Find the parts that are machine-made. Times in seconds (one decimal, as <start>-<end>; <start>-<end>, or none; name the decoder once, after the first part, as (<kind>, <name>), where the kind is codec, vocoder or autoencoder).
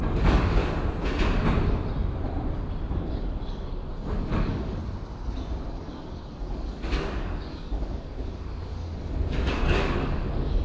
0.0-0.6 (codec, DAC); 3.1-4.8; 5.7-10.6